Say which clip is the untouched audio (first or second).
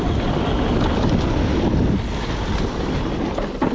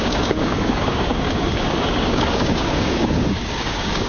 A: first